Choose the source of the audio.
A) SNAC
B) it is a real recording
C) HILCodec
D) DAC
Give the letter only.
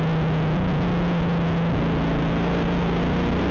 B